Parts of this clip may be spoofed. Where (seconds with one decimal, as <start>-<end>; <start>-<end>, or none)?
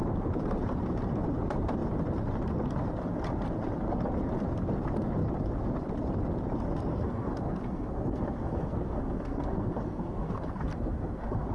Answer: 6.9-11.5